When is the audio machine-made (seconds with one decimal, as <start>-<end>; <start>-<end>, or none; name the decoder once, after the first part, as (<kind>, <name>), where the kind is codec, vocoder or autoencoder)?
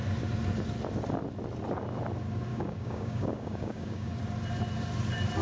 2.5-4.1 (codec, DAC)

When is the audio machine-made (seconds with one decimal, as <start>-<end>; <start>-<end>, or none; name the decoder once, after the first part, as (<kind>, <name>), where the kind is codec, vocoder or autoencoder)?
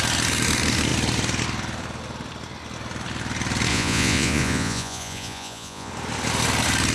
3.7-5.9 (vocoder, Vocos)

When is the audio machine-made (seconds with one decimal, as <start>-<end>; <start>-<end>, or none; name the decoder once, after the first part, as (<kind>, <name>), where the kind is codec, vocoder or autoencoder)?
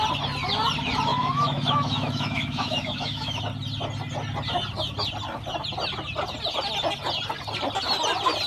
1.1-3.4 (autoencoder, DAC-VAE)